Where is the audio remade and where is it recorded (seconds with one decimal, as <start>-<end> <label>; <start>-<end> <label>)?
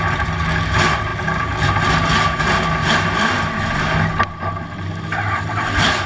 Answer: 0.0-6.1 recorded